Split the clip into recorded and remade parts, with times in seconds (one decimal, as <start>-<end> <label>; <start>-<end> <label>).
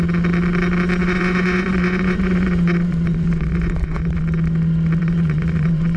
0.0-1.0 recorded; 1.0-4.2 remade; 4.2-5.0 recorded; 5.0-6.0 remade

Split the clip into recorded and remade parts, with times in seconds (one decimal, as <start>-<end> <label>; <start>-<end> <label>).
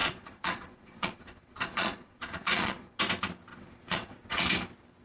0.0-3.0 remade; 3.0-3.5 recorded; 3.5-4.4 remade; 4.4-5.0 recorded